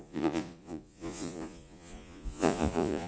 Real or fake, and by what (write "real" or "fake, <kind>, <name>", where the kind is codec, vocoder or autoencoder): fake, vocoder, Vocos